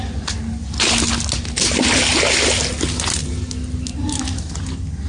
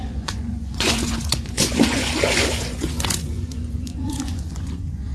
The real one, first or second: first